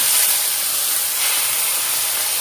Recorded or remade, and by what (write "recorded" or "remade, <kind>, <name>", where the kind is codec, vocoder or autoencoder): remade, vocoder, BigVGAN v2